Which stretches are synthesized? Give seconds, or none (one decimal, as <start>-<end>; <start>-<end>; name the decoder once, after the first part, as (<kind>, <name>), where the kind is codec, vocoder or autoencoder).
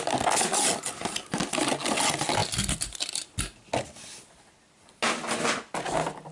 none